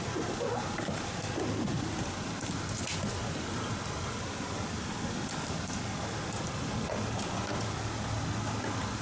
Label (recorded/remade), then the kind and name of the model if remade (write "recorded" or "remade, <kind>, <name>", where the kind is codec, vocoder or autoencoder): recorded